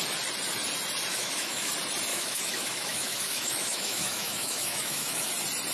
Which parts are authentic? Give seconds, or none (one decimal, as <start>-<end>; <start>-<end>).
0.0-1.1; 1.7-2.1; 5.3-5.7